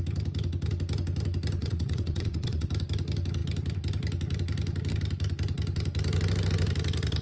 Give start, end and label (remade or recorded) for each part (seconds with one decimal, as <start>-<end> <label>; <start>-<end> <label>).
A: 0.0-1.6 recorded; 1.6-2.7 remade; 2.7-7.2 recorded